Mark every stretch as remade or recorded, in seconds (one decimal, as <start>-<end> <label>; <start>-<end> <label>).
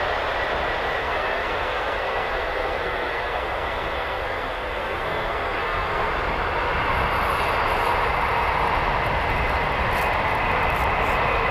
0.0-1.0 recorded; 1.0-6.1 remade; 6.1-11.5 recorded